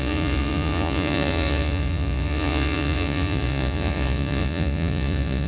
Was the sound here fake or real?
fake